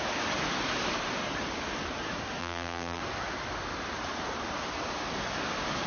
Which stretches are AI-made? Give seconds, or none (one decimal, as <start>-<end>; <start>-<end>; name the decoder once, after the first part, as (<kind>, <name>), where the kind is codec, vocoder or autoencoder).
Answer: 2.4-3.0 (vocoder, BigVGAN v2)